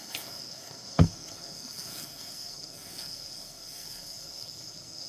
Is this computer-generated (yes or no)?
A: yes